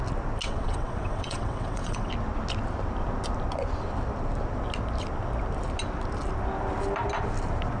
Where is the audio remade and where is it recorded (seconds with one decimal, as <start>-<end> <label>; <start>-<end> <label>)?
0.0-0.4 recorded; 0.4-2.1 remade; 2.1-7.8 recorded